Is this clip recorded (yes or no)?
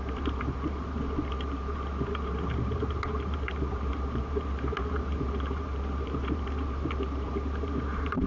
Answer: no